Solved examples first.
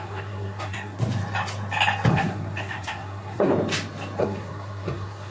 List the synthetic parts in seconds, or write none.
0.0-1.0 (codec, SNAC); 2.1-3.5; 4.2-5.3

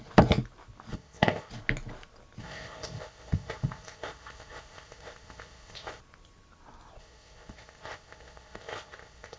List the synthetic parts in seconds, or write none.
0.9-1.5 (codec, ZipCodec); 2.4-6.0; 7.0-9.4

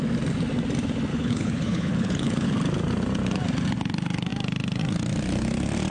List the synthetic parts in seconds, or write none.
1.1-2.5 (codec, HILCodec)